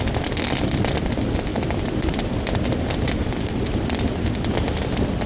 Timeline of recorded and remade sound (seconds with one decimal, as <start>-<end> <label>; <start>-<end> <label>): 0.0-5.3 recorded